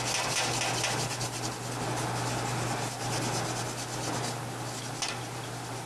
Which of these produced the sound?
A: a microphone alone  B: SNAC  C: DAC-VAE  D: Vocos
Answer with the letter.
A